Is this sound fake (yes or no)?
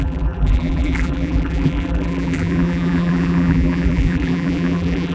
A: yes